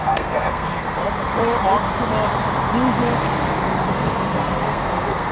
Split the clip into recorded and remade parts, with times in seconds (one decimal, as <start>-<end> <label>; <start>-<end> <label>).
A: 0.0-1.0 remade; 1.0-3.9 recorded; 3.9-5.3 remade